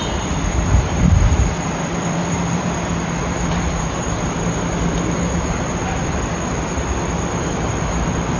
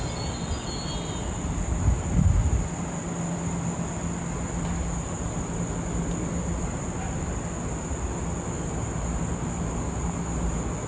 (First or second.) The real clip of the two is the second